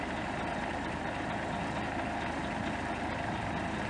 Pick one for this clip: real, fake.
real